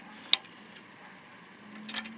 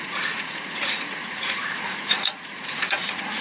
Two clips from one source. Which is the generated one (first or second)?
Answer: second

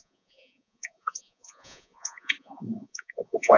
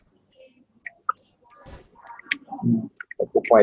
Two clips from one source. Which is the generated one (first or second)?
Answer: first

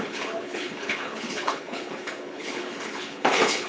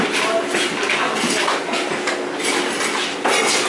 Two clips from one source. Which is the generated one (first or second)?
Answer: first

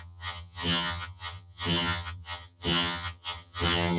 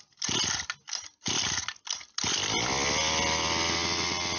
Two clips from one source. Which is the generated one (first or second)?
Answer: first